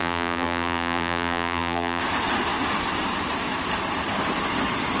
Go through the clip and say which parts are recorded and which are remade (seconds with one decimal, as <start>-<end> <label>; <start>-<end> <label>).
0.0-2.0 remade; 2.0-5.0 recorded